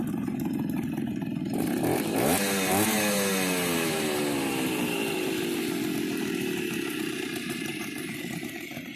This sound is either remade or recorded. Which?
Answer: remade